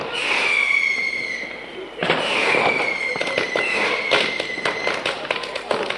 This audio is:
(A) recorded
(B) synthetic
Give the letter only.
A